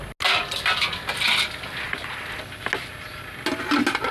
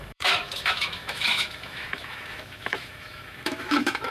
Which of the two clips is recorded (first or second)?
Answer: first